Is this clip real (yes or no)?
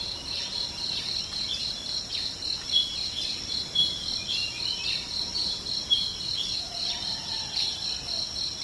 yes